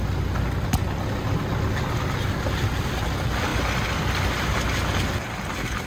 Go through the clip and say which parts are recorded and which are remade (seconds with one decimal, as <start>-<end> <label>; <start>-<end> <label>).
0.0-5.9 recorded